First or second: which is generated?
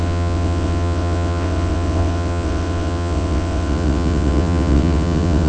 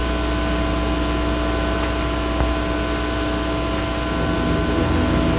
first